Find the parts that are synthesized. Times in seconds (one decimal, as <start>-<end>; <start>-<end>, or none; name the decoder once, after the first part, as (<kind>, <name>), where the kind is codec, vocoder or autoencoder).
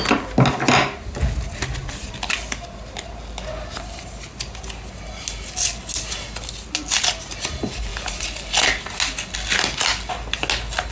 none